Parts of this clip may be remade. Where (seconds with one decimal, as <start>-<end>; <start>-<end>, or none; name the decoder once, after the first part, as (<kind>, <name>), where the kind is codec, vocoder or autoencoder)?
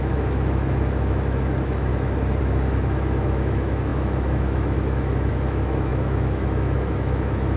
0.0-1.9 (autoencoder, DAC-VAE); 2.4-7.6